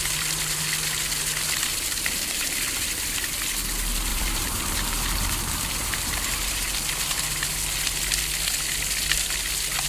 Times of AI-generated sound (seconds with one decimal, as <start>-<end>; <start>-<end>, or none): 1.7-2.6; 4.1-7.2